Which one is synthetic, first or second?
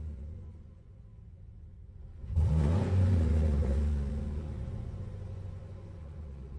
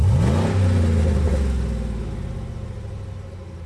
first